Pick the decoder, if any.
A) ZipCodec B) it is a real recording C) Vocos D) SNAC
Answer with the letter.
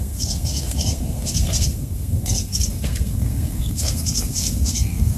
D